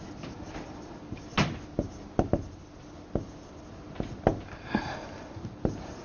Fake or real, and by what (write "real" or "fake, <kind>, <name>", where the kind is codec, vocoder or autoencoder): real